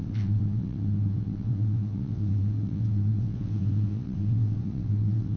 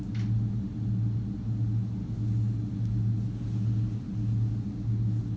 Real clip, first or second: second